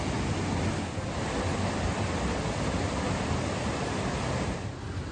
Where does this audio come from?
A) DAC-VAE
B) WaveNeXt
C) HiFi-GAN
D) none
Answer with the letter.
D